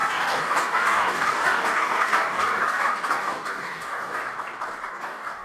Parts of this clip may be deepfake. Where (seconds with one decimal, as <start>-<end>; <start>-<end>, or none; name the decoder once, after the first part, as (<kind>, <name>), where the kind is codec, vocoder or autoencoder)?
0.0-4.2 (codec, DAC); 4.9-5.4